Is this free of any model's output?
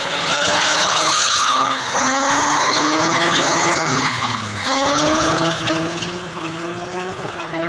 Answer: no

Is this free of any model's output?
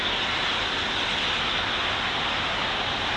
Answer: yes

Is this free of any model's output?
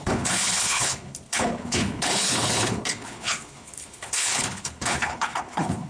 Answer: no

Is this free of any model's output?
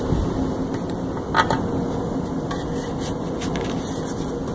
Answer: yes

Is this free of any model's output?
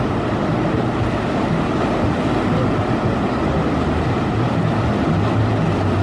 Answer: yes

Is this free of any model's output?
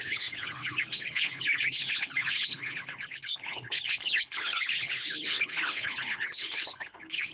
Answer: no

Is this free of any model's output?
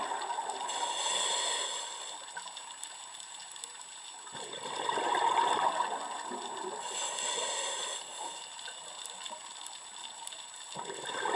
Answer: yes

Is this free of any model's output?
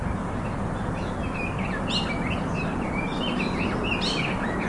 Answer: yes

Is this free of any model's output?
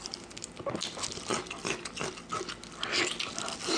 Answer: yes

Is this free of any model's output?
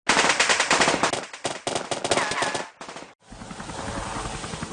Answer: yes